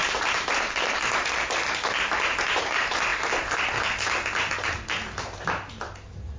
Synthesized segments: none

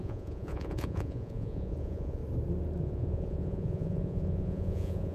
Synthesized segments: 0.0-2.2 (vocoder, Vocos); 2.8-5.1

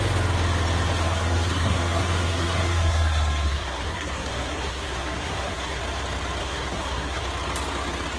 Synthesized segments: 1.0-5.8 (codec, SNAC); 6.4-7.2

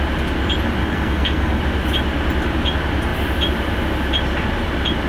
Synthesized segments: 0.8-1.6 (codec, SNAC)

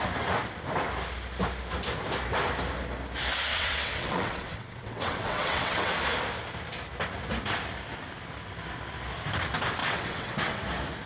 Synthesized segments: 3.5-5.9 (vocoder, WaveNeXt); 9.8-10.6